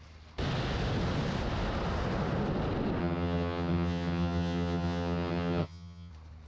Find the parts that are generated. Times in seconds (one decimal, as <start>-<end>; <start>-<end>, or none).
3.0-6.1